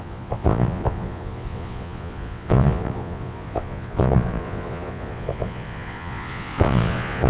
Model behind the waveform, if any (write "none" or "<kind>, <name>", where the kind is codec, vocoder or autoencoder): vocoder, Vocos